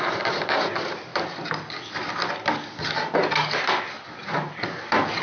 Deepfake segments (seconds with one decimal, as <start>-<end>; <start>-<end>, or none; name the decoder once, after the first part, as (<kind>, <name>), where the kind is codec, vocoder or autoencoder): 0.0-1.1 (vocoder, BigVGAN v2); 4.2-5.2